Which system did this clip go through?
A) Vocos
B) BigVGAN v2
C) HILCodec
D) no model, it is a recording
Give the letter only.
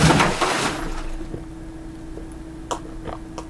D